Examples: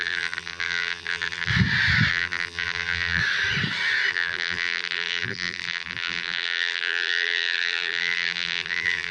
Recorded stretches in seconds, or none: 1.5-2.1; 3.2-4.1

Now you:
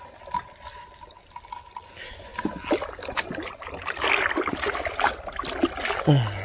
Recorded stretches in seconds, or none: 0.0-6.4